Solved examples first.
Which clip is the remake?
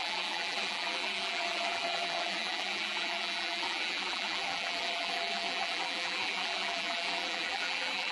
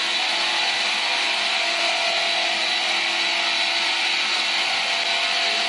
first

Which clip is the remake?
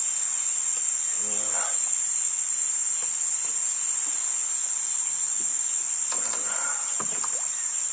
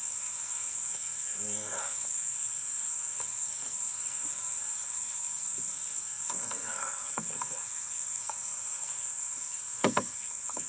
second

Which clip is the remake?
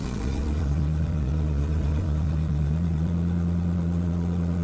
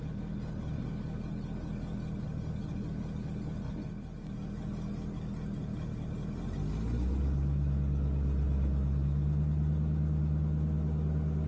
first